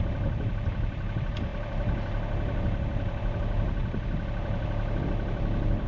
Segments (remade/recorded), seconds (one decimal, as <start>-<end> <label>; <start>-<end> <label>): 0.0-5.9 remade